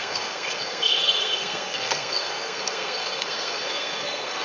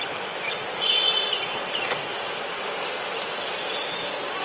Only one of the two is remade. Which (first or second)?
first